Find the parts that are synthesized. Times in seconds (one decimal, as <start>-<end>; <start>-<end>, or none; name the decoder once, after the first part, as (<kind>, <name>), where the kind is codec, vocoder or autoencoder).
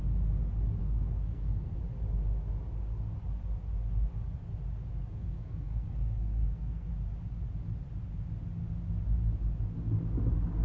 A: 0.8-1.8 (codec, SNAC); 5.0-6.9